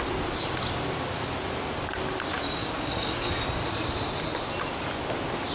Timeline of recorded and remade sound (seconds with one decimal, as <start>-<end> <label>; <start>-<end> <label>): 0.0-2.6 recorded; 2.6-3.3 remade; 3.3-5.5 recorded